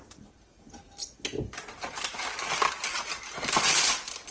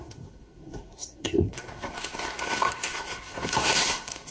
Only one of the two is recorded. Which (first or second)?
first